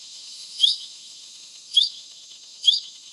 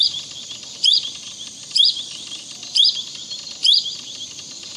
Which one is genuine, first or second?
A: second